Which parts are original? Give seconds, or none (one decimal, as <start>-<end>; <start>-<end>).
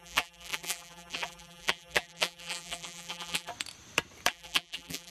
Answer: 3.5-4.3